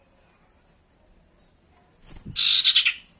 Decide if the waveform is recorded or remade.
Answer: recorded